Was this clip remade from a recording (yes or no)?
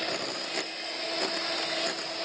no